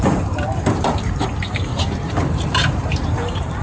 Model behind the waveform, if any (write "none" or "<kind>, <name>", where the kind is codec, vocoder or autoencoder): vocoder, BigVGAN v2